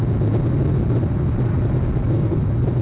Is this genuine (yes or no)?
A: yes